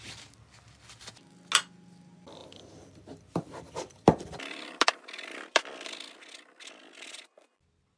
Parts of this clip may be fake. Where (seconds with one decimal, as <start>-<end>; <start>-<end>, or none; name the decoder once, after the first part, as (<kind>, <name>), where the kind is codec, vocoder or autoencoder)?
2.4-5.6 (vocoder, BigVGAN v2)